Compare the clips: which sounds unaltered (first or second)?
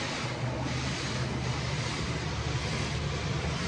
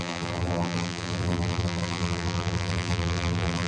first